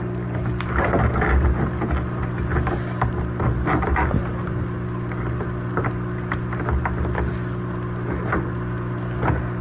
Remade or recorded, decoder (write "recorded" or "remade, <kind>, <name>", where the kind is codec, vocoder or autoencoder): recorded